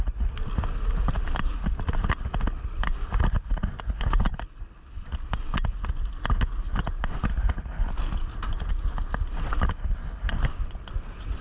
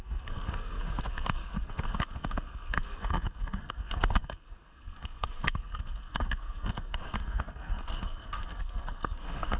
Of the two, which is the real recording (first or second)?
first